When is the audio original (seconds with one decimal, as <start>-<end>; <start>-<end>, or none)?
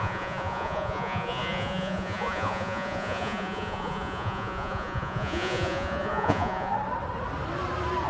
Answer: 6.7-8.1